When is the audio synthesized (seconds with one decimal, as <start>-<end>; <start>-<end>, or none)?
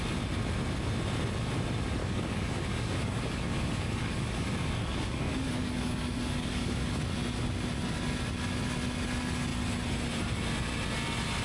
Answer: 2.0-7.0